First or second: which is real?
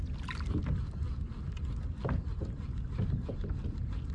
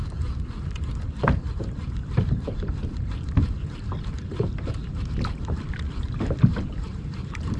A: first